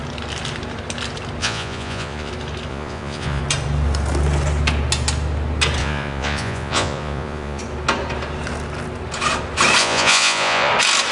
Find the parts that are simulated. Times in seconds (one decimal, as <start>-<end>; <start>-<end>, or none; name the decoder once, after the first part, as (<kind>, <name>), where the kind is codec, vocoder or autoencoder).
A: 1.4-2.3 (vocoder, Vocos); 2.7-3.4; 5.8-7.6; 9.8-10.7